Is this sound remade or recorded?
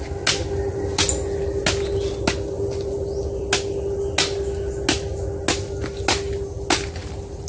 recorded